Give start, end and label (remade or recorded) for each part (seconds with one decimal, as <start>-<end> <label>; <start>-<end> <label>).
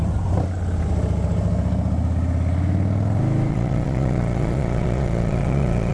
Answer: 0.0-3.5 recorded; 3.5-5.9 remade